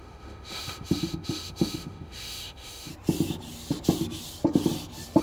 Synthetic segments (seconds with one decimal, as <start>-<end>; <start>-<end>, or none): 0.0-2.9

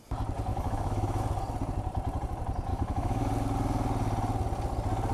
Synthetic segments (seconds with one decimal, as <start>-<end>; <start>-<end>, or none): 0.5-1.2; 2.7-3.3

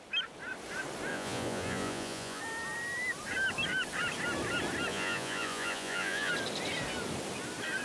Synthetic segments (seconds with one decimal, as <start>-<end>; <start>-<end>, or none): 1.1-2.4; 4.9-6.3

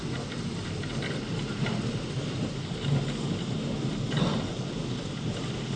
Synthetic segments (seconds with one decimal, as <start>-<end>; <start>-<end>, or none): none